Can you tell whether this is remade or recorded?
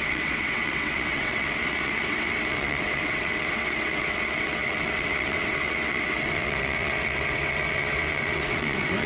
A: remade